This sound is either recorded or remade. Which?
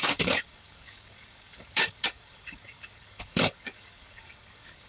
remade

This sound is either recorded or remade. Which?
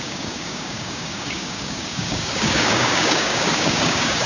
remade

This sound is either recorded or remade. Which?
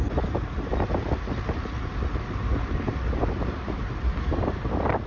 recorded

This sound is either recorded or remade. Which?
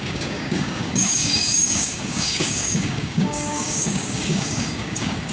remade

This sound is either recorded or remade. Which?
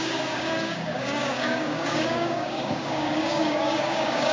remade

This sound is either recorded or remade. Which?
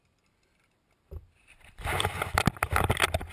recorded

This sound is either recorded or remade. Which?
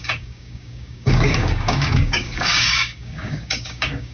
remade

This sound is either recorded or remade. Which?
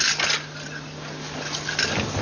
recorded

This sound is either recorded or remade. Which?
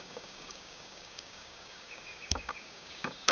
remade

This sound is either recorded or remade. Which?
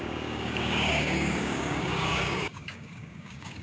remade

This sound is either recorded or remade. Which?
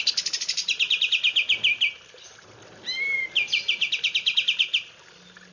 recorded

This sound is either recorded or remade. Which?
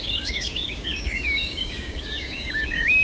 remade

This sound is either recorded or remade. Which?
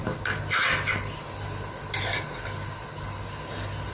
recorded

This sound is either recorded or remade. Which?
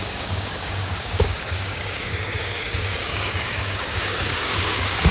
remade